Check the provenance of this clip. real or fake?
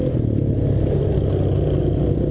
real